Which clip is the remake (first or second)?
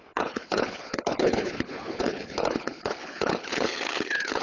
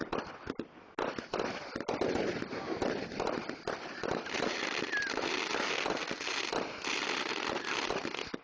first